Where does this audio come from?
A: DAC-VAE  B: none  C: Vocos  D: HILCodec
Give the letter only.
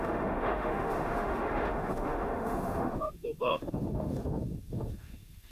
A